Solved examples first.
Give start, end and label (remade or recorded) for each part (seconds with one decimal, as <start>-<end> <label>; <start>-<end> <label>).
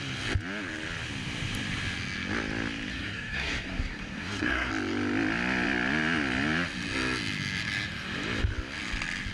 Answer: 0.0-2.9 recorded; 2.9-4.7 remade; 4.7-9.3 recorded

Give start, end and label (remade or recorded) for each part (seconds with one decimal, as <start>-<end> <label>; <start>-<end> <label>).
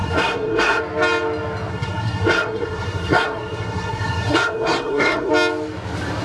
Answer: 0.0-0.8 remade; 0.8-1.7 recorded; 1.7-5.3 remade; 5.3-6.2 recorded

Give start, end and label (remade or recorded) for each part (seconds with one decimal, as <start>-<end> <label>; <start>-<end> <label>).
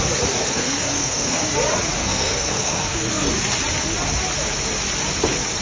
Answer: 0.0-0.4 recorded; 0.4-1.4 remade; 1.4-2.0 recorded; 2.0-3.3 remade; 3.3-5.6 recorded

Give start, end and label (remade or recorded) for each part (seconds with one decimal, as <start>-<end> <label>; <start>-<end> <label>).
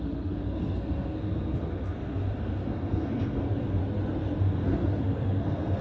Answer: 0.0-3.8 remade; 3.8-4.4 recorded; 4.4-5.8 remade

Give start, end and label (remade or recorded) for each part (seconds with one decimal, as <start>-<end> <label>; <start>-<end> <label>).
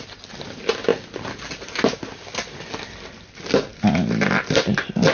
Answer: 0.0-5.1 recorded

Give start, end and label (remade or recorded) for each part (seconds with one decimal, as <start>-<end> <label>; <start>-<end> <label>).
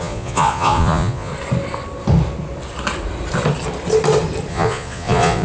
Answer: 0.0-1.3 remade; 1.3-4.5 recorded; 4.5-5.4 remade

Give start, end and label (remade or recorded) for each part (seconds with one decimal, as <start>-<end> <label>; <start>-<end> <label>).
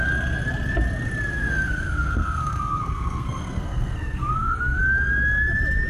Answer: 0.0-1.3 recorded; 1.3-4.8 remade; 4.8-5.9 recorded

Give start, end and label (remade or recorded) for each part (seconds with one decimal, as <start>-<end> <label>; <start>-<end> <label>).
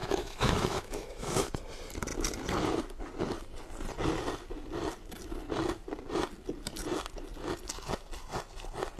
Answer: 0.0-1.5 remade; 1.5-9.0 recorded